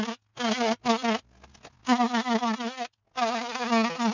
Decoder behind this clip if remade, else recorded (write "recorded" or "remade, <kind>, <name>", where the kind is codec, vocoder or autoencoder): recorded